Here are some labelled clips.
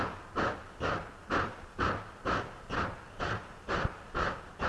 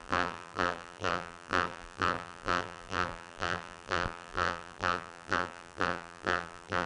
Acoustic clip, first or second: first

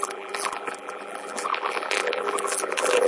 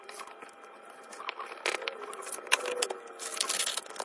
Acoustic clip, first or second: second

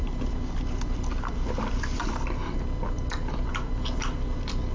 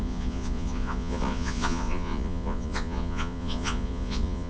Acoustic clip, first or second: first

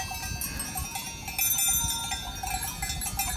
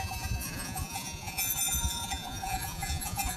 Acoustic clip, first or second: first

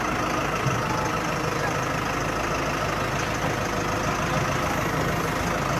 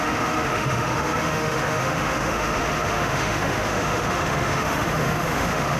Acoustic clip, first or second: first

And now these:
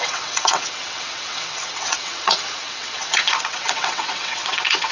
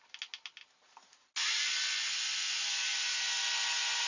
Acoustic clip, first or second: second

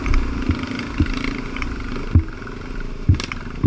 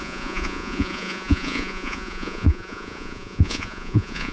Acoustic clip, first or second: first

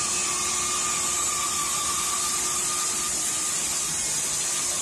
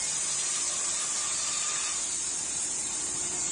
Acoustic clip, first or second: first